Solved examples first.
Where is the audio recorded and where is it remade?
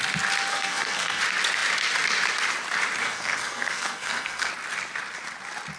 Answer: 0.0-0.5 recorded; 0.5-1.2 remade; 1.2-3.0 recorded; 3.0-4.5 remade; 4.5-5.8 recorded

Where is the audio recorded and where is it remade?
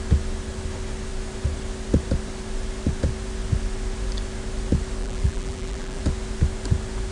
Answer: 0.0-5.0 recorded; 5.0-6.0 remade; 6.0-7.1 recorded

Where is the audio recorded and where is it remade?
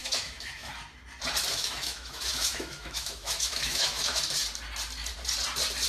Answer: 0.0-0.7 remade; 0.7-1.5 recorded; 1.5-4.2 remade; 4.2-5.9 recorded